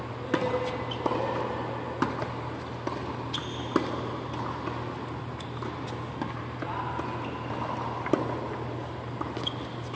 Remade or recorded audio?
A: recorded